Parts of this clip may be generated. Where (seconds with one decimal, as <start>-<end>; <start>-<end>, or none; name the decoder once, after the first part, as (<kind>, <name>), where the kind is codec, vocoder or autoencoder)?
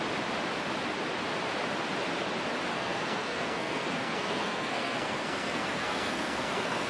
2.7-6.9 (codec, SNAC)